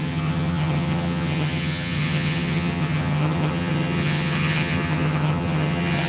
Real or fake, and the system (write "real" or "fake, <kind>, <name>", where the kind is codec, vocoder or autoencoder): fake, vocoder, HiFi-GAN